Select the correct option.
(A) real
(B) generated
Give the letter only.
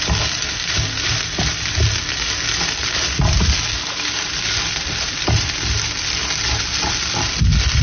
A